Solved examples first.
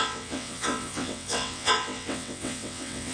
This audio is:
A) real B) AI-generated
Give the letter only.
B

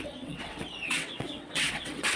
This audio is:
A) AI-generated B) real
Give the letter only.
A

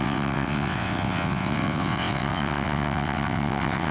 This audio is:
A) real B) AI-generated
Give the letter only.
B